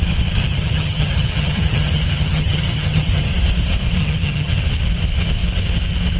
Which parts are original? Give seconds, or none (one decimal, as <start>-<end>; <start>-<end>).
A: 0.0-0.4; 3.3-4.0; 4.6-6.2